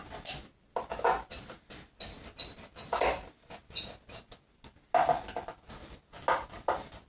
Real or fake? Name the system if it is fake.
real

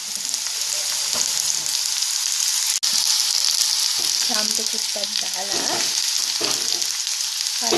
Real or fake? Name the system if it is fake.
real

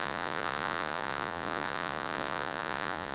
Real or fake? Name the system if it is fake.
fake, vocoder, Vocos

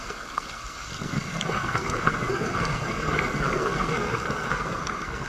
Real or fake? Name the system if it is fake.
fake, codec, SNAC